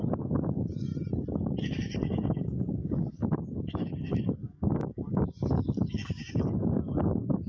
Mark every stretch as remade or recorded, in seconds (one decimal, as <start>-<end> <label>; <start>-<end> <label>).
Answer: 0.0-0.9 remade; 0.9-1.6 recorded; 1.6-7.5 remade